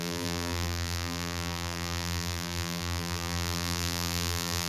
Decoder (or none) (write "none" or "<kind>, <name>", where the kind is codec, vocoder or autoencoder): vocoder, BigVGAN v2